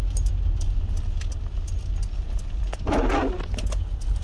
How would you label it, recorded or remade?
recorded